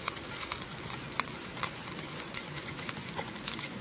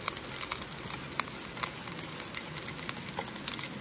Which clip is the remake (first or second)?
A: first